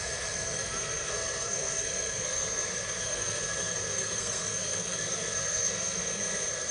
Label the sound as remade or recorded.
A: remade